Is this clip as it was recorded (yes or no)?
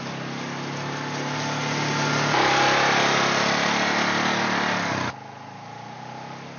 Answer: yes